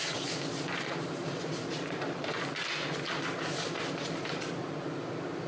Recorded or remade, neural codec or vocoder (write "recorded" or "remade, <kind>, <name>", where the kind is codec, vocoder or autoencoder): recorded